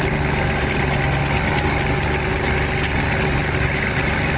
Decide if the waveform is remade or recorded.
recorded